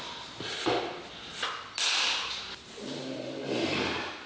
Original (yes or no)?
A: yes